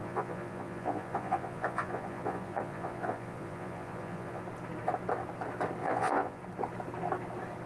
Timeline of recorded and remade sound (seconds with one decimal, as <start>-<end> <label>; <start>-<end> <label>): 0.0-4.4 remade; 4.4-5.8 recorded; 5.8-6.4 remade; 6.4-7.7 recorded